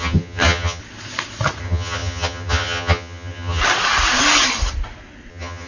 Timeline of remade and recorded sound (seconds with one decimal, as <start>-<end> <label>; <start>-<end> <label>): 0.0-0.8 remade; 0.8-1.6 recorded; 1.6-3.6 remade; 3.6-5.3 recorded; 5.3-5.7 remade